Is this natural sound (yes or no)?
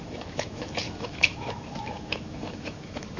no